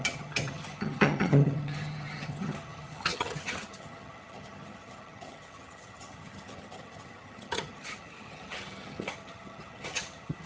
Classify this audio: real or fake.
fake